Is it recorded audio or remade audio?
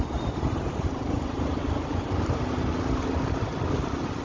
recorded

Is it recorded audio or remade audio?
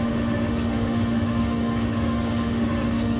remade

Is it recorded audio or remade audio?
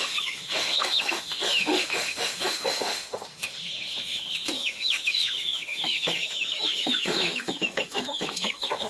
remade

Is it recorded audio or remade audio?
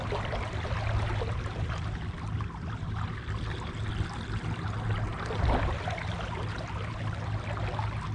recorded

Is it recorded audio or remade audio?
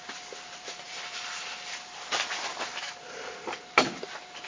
remade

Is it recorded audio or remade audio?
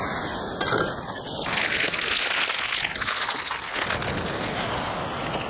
recorded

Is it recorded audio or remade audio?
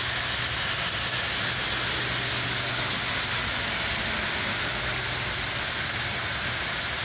recorded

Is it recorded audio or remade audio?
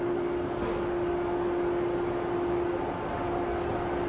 recorded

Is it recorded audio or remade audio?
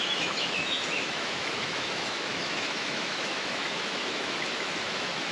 remade